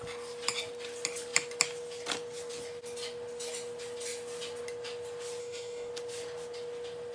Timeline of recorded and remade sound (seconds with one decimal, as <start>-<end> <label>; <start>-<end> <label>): 0.0-5.4 recorded; 5.4-5.9 remade; 5.9-7.1 recorded